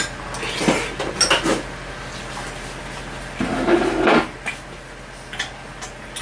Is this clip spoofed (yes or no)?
no